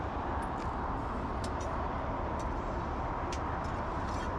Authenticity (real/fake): real